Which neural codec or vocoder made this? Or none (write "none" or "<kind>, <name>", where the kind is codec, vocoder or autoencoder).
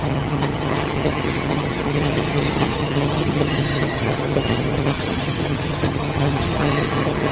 vocoder, HiFi-GAN